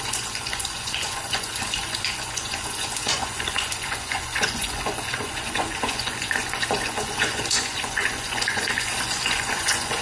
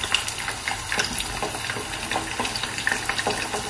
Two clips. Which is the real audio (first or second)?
second